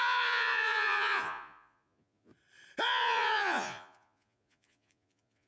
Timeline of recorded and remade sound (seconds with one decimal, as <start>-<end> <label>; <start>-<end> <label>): 0.0-2.3 remade; 2.3-2.8 recorded; 2.8-5.5 remade

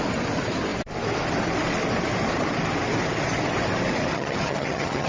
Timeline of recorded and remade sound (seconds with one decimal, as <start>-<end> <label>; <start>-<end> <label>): 0.0-4.1 recorded; 4.1-5.1 remade

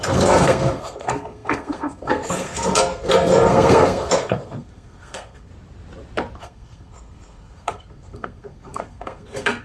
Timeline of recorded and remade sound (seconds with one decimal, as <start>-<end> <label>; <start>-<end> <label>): 0.0-5.5 remade; 5.5-6.4 recorded; 6.4-9.6 remade

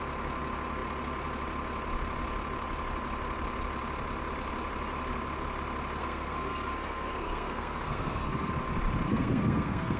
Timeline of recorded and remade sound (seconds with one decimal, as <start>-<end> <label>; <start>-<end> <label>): 0.0-6.0 recorded; 6.0-8.5 remade; 8.5-9.1 recorded; 9.1-10.0 remade

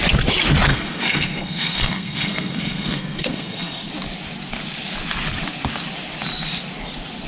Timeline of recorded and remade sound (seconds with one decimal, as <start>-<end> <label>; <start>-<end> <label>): 0.0-0.7 recorded; 0.7-3.9 remade; 3.9-7.3 recorded

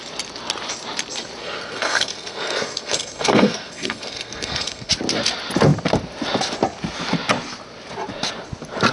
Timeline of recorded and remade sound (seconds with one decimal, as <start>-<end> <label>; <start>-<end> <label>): 0.0-1.4 recorded; 1.4-4.9 remade; 4.9-8.9 recorded

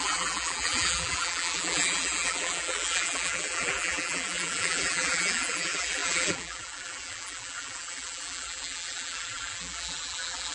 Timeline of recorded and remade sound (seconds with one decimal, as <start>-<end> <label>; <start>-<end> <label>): 0.0-10.5 remade

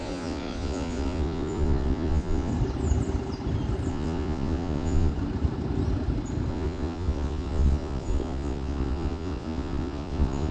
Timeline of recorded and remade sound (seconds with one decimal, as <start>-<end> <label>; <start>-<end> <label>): 0.0-2.5 remade; 2.5-3.9 recorded; 3.9-5.1 remade; 5.1-6.5 recorded; 6.5-10.5 remade